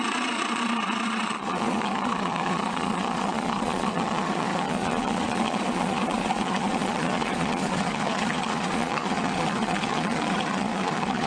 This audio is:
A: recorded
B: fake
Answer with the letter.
B